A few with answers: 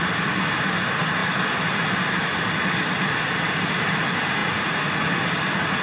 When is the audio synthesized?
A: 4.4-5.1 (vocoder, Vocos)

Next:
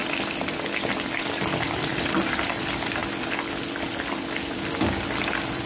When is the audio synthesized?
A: 1.2-1.9 (vocoder, BigVGAN v2); 2.4-3.0; 5.2-5.7

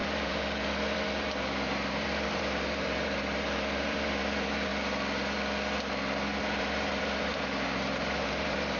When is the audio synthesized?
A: 0.0-4.7 (vocoder, BigVGAN v2); 6.4-8.8

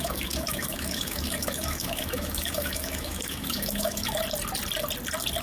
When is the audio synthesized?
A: 0.0-4.2 (autoencoder, DAC-VAE)

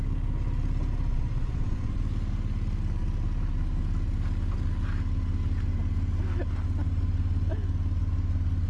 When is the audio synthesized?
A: 1.1-2.0 (vocoder, Vocos)

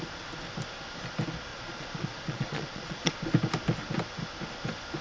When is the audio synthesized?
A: 1.5-3.2 (vocoder, Vocos)